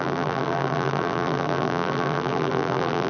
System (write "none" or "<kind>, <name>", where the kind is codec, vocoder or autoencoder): vocoder, BigVGAN v2